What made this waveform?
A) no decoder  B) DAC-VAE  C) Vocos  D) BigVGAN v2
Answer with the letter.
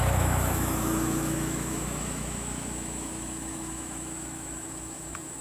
B